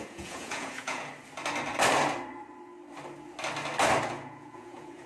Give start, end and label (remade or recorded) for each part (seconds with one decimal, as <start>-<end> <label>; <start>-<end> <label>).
0.0-1.1 remade; 1.1-4.2 recorded; 4.2-5.1 remade